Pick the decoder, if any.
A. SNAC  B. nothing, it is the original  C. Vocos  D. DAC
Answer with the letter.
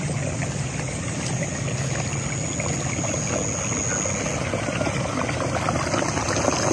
B